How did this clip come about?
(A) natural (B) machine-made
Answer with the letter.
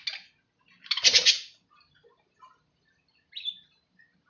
A